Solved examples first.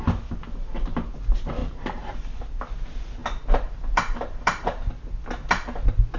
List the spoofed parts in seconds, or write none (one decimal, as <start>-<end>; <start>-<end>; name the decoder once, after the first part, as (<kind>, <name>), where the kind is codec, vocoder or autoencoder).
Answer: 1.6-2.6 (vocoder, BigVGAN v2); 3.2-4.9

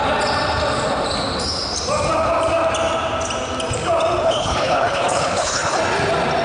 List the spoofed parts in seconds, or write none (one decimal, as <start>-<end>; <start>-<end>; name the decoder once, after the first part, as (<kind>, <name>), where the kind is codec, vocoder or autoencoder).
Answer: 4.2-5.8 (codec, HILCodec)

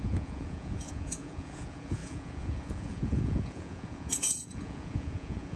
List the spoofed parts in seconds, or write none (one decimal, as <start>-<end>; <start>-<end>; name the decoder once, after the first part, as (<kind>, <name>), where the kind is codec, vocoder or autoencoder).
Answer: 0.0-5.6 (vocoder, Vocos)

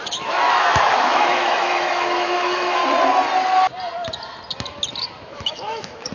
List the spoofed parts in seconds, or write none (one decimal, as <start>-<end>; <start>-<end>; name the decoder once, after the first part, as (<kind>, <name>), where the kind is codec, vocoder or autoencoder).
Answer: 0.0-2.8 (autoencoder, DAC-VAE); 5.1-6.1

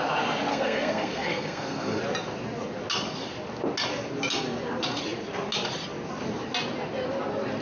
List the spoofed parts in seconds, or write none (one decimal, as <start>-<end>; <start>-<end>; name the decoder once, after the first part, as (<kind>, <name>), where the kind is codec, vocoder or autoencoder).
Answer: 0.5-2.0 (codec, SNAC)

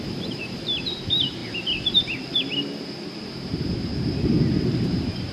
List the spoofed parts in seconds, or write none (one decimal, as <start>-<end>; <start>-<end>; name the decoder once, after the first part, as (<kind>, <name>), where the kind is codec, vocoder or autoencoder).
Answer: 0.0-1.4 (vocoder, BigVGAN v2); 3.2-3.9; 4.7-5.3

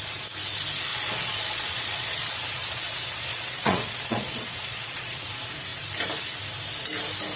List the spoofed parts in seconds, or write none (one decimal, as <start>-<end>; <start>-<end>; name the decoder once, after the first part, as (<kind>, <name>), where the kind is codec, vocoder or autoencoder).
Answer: 0.9-5.3 (vocoder, Vocos)